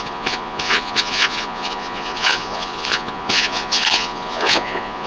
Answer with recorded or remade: remade